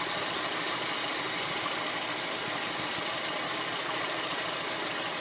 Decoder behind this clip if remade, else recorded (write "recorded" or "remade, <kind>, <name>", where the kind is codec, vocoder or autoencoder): recorded